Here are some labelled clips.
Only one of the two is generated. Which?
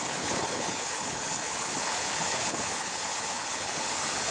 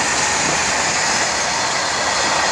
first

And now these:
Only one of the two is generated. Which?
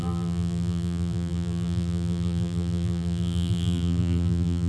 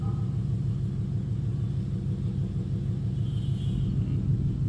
first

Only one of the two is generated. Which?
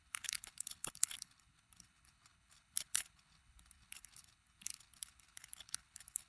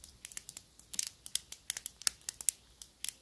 first